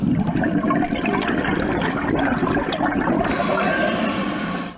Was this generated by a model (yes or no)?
no